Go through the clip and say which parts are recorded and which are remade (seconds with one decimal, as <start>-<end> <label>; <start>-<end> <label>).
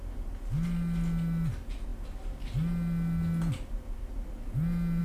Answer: 0.0-5.0 recorded